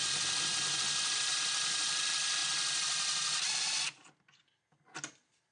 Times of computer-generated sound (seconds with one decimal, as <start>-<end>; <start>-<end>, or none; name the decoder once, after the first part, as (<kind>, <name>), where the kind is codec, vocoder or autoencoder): 0.0-2.4 (vocoder, BigVGAN v2); 5.1-5.5